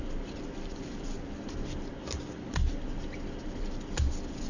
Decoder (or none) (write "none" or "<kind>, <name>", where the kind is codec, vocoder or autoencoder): none